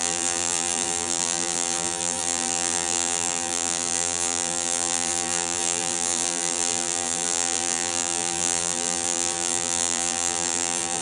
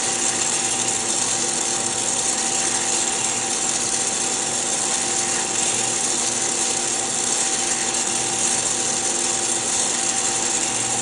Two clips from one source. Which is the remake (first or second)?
first